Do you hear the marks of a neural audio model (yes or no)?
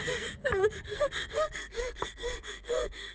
yes